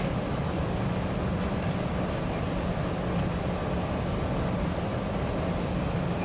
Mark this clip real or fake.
real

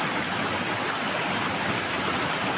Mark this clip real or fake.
real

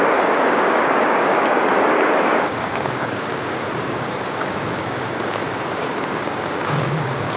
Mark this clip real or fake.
fake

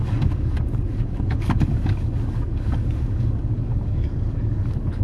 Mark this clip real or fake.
fake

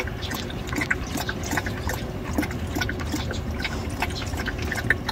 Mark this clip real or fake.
real